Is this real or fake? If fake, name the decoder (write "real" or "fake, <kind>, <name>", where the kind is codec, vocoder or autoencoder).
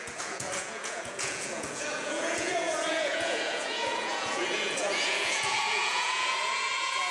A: fake, vocoder, Vocos